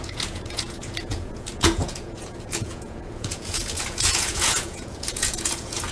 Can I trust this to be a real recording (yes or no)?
no